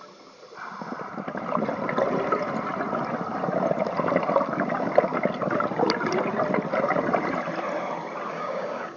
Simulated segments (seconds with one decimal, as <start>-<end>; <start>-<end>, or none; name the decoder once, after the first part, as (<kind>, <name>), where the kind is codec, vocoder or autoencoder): 8.3-9.0 (codec, DAC)